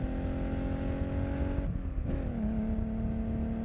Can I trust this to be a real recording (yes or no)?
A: yes